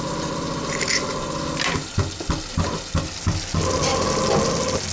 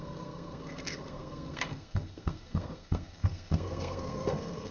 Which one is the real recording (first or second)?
first